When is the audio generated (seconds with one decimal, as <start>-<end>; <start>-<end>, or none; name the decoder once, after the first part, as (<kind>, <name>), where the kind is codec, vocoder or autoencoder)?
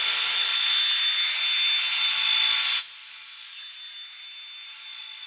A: none